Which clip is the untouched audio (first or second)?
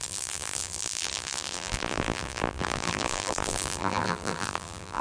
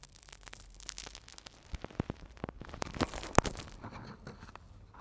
second